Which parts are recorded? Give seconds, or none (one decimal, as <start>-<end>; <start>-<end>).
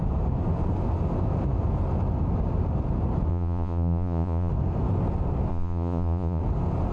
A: 0.0-3.3; 4.5-5.5; 6.4-6.9